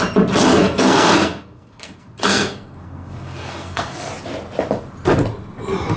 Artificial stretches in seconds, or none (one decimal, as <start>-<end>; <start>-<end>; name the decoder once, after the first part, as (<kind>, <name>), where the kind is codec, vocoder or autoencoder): 0.5-4.1 (codec, SNAC)